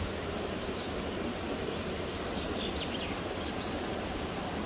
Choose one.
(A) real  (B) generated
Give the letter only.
A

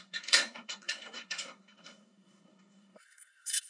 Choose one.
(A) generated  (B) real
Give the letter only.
A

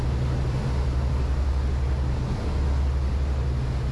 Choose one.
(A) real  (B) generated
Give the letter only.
A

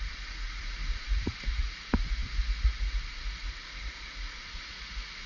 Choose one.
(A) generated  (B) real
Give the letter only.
A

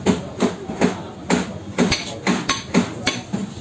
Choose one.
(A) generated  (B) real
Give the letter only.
B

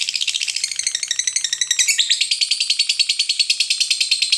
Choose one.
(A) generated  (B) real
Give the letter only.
B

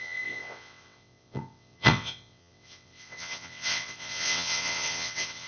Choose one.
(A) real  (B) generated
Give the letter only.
B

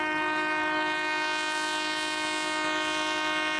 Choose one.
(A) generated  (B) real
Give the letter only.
B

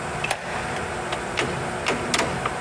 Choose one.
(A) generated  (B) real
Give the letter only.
B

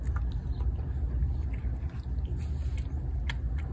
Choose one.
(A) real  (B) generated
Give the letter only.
A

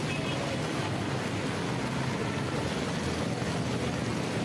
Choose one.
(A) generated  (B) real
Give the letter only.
B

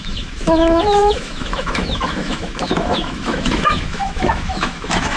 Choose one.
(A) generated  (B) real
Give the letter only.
A